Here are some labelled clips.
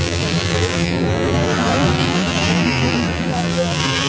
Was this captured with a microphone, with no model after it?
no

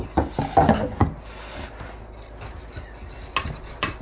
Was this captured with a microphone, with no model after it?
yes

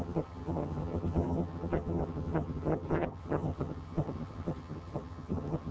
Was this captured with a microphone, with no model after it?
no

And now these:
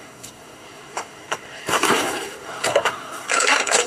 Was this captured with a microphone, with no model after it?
no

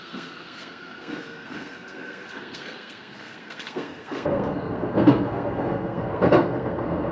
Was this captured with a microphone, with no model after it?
no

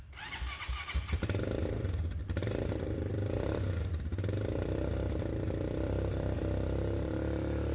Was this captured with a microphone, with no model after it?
no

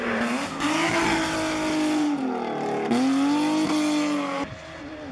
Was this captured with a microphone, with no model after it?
yes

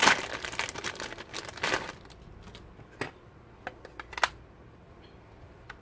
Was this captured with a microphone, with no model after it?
yes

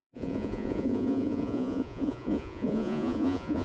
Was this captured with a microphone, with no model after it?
no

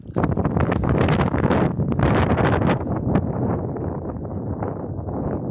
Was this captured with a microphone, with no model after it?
yes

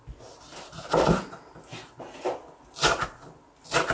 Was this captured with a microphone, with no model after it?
yes